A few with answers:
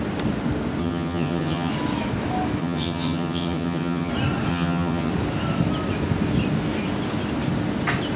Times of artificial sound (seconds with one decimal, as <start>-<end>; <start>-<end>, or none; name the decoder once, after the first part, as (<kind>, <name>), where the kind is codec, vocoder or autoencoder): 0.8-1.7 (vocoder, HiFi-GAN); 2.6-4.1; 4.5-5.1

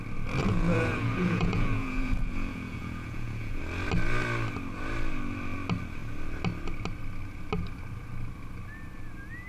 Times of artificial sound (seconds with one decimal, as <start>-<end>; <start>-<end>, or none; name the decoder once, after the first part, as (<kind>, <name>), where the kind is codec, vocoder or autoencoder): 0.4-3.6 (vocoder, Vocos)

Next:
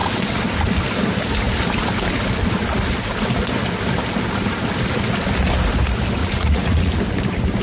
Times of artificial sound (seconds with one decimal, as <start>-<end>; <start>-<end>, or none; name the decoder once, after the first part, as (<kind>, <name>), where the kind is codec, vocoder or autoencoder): 6.2-6.9 (vocoder, Vocos)

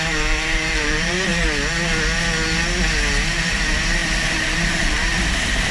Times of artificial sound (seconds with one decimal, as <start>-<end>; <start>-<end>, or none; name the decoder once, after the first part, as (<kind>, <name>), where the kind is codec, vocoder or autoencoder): 0.0-1.3 (vocoder, BigVGAN v2); 3.5-5.7